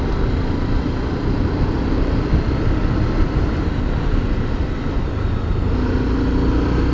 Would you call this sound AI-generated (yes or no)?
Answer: no